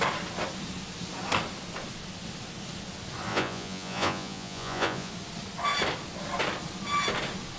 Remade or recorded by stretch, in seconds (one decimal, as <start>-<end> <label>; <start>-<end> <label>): 0.0-3.3 recorded; 3.3-5.1 remade; 5.1-7.6 recorded